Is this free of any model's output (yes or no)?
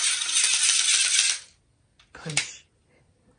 yes